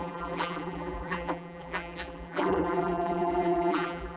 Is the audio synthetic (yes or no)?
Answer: yes